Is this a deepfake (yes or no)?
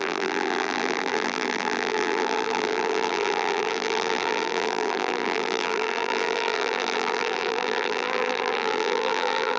yes